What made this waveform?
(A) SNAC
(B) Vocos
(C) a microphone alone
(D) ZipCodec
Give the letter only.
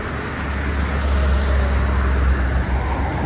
C